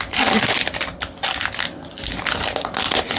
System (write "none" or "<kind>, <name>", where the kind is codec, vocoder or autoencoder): none